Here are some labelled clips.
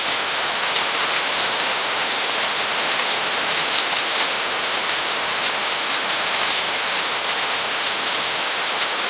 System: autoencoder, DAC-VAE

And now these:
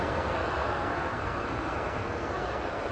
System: codec, SNAC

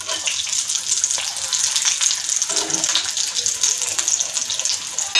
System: none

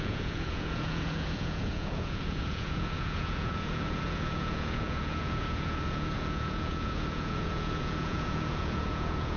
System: vocoder, Vocos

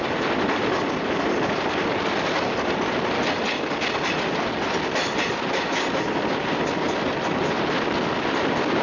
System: none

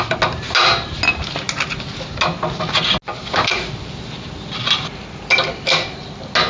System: none